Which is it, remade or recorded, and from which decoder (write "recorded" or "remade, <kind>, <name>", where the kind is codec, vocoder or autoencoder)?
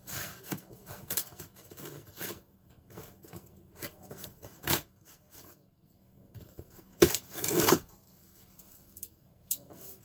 remade, codec, SNAC